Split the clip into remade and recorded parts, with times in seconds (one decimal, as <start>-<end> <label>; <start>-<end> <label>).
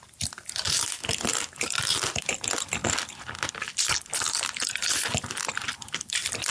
0.0-2.8 remade; 2.8-3.5 recorded; 3.5-6.5 remade